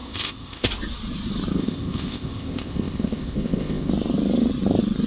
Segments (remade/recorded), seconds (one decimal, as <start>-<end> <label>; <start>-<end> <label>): 0.0-0.7 remade; 0.7-1.5 recorded; 1.5-3.9 remade; 3.9-5.1 recorded